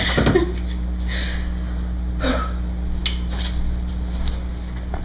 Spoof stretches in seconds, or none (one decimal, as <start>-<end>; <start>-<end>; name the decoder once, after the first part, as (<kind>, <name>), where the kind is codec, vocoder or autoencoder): none